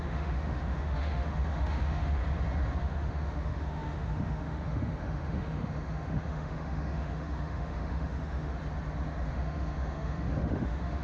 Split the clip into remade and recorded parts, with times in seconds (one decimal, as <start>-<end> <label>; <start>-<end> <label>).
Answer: 0.0-2.2 remade; 2.2-2.8 recorded; 2.8-8.5 remade; 8.5-9.3 recorded; 9.3-11.0 remade